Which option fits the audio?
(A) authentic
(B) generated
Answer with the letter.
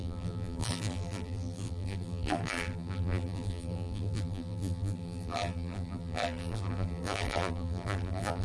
B